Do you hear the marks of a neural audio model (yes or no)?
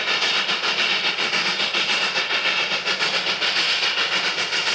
no